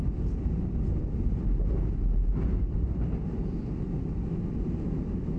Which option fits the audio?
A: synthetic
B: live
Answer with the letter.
B